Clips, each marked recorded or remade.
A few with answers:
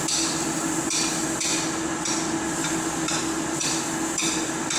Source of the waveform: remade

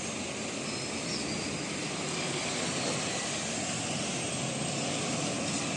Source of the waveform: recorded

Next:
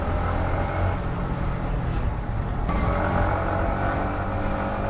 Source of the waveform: recorded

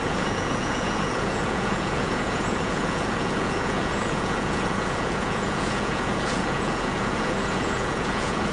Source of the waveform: remade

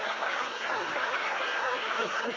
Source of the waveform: remade